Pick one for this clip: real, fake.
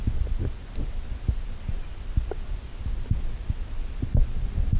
real